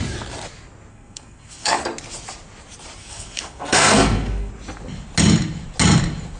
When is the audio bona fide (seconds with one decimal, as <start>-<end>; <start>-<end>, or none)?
0.0-0.9; 1.8-3.0; 4.5-6.4